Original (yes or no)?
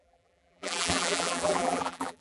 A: no